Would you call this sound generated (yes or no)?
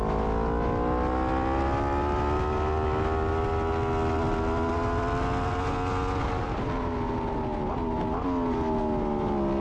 no